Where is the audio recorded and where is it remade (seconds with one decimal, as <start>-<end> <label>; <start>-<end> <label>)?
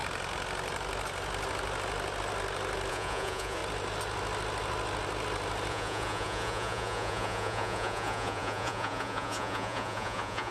0.0-2.9 recorded; 2.9-3.6 remade; 3.6-5.7 recorded; 5.7-10.5 remade